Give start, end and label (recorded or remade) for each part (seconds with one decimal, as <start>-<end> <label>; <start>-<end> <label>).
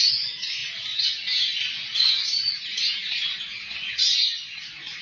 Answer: 0.0-5.0 recorded